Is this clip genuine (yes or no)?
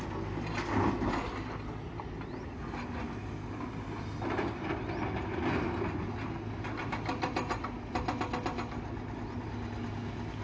yes